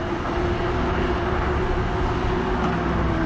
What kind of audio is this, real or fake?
real